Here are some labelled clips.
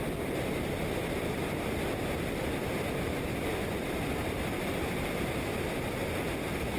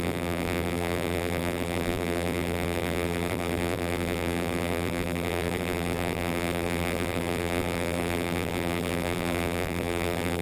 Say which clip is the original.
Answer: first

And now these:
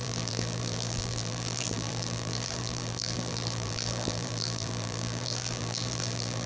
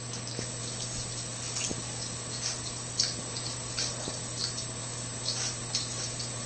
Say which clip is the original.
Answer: second